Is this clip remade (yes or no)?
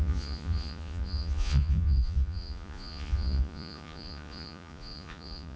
yes